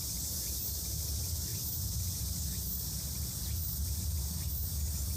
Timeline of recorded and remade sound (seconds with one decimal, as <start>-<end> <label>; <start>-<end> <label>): 0.0-1.5 recorded; 1.5-2.2 remade; 2.2-5.2 recorded